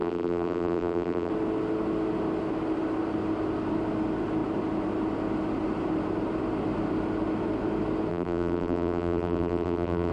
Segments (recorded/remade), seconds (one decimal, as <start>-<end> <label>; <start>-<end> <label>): 0.0-1.3 remade; 1.3-8.1 recorded; 8.1-10.1 remade

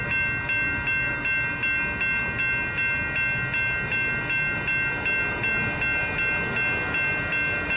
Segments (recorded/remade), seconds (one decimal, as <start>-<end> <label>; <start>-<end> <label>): 0.0-7.8 recorded

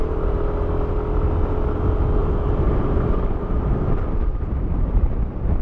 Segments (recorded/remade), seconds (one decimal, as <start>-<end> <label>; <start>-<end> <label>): 0.0-2.2 recorded; 2.2-3.8 remade; 3.8-4.3 recorded; 4.3-5.6 remade